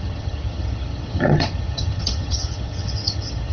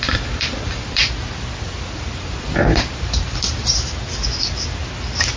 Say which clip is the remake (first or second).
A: first